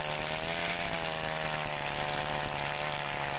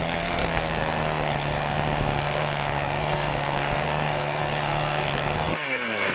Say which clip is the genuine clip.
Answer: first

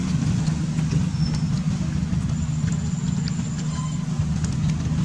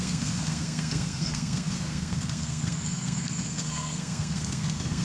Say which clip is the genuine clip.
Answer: first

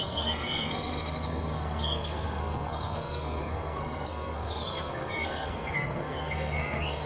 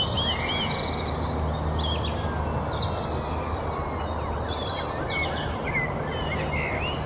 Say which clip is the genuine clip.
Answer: second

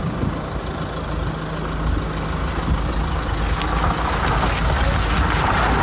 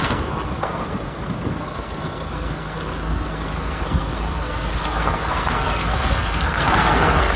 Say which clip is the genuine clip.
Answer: first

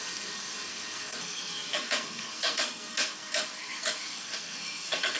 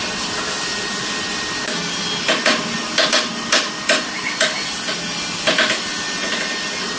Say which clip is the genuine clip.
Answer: second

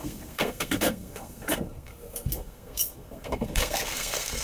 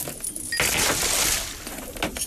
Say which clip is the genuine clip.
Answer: second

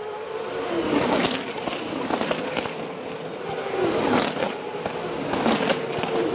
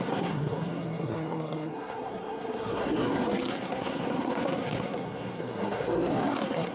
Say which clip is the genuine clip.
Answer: first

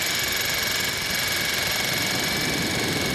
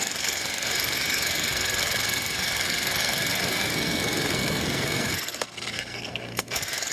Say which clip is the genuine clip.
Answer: first